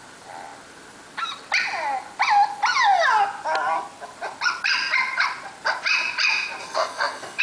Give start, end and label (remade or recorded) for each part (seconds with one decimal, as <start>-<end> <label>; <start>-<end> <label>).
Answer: 0.0-6.6 recorded; 6.6-7.4 remade